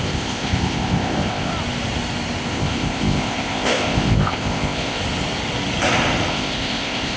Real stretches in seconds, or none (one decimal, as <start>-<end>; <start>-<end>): 1.5-2.5; 5.0-6.3